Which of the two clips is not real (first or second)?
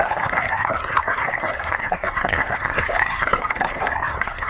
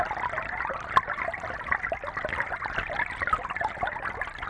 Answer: first